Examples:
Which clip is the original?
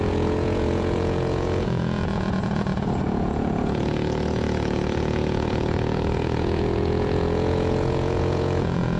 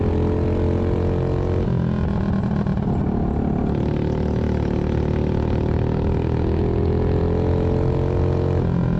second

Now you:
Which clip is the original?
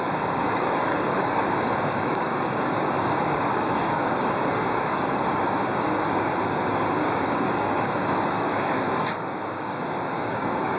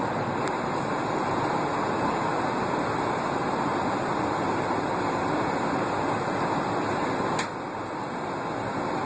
second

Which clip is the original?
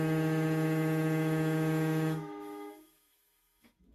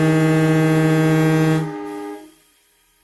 second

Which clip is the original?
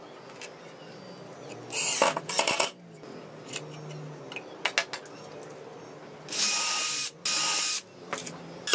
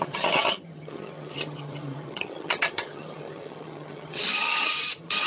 first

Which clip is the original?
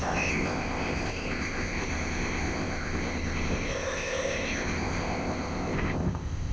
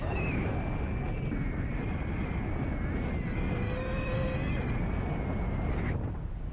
second